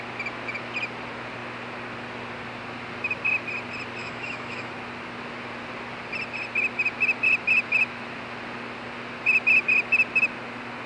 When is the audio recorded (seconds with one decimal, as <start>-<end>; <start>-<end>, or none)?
0.0-4.0; 4.7-10.9